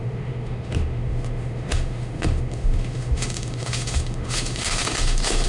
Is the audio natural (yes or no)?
no